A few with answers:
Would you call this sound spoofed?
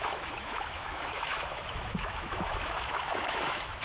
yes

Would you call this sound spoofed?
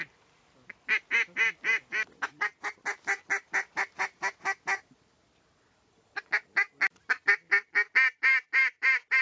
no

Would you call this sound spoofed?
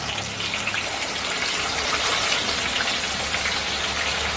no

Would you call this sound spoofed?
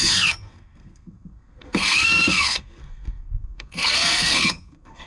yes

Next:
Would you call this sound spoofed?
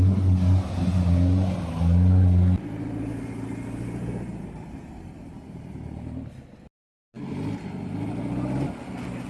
no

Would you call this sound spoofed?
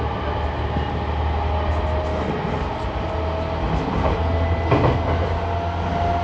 no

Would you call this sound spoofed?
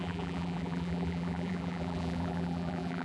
yes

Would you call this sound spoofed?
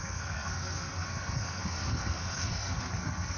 yes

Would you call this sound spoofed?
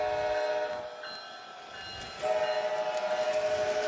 no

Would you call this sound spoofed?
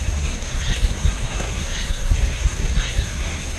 yes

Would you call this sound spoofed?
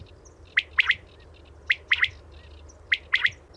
no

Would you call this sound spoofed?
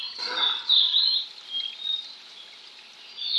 no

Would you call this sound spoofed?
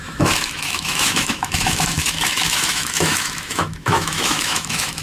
yes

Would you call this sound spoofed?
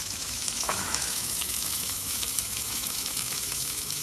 yes